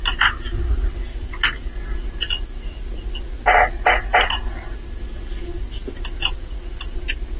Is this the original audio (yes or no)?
yes